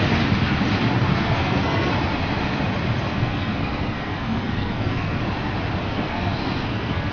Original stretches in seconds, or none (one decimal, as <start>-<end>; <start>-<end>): 0.0-1.1; 1.9-3.1; 5.2-5.8